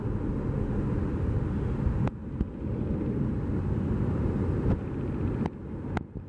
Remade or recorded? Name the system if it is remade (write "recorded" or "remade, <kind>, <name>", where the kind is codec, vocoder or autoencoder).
recorded